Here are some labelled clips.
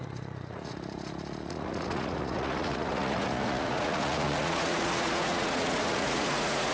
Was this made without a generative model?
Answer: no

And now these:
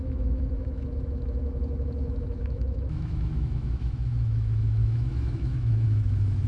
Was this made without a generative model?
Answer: no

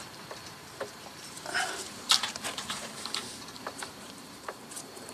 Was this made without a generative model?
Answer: no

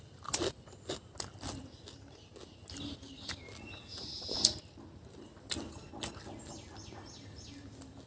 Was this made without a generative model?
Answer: yes